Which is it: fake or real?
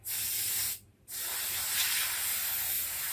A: real